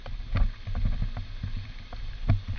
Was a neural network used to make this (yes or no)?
yes